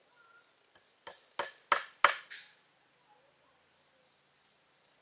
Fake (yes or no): no